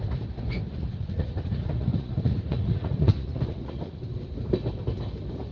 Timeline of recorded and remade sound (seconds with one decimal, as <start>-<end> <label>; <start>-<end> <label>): 0.0-0.7 recorded; 0.7-4.0 remade; 4.0-5.5 recorded